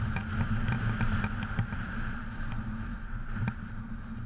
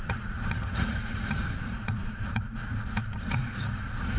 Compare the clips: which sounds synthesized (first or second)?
second